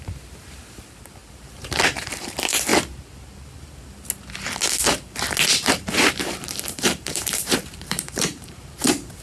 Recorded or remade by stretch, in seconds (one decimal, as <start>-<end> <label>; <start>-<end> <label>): 0.0-2.7 remade; 2.7-5.7 recorded; 5.7-9.2 remade